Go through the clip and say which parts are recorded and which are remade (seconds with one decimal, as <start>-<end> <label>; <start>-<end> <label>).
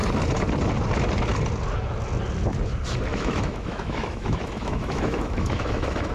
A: 0.0-3.1 recorded; 3.1-6.1 remade